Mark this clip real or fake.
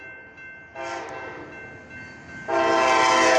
real